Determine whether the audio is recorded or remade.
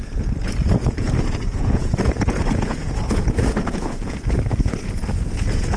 remade